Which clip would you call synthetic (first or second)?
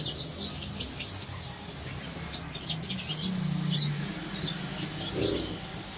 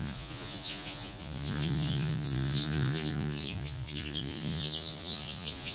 second